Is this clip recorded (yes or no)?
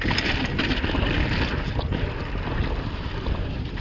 yes